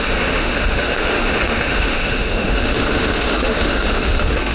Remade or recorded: remade